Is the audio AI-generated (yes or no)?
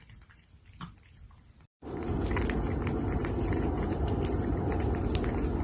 no